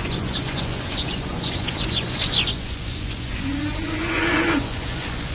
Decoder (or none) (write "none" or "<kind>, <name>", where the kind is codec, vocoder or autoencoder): vocoder, Vocos